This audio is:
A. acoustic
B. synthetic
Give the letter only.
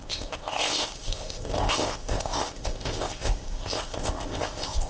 B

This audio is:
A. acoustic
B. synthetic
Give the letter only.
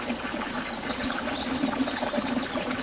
A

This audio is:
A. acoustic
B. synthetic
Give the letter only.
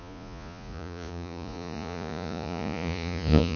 B